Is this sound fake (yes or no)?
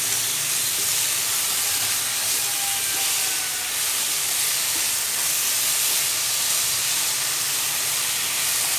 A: no